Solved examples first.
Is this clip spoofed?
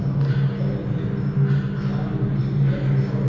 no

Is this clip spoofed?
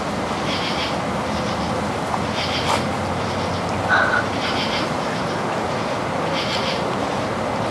no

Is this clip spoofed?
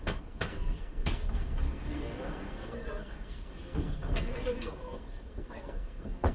yes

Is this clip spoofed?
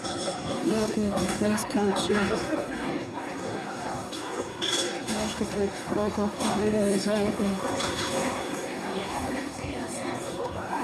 yes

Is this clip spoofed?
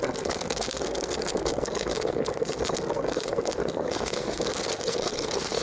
yes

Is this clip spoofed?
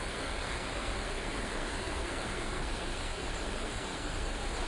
yes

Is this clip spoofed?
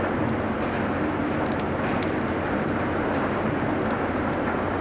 no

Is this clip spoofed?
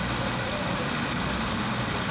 no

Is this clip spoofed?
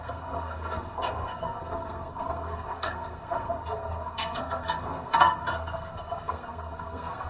yes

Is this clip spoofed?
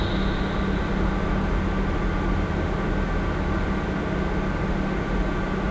no